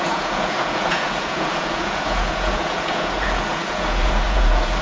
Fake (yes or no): yes